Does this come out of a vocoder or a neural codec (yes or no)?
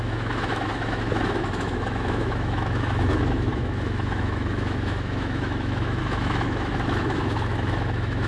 yes